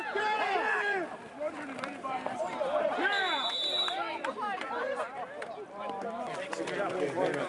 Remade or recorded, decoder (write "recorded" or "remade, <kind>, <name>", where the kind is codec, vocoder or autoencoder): remade, vocoder, BigVGAN v2